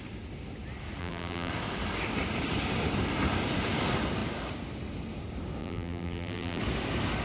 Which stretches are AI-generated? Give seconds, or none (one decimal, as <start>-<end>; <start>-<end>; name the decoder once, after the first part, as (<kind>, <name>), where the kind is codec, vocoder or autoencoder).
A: 1.0-1.5 (vocoder, BigVGAN v2); 5.6-6.6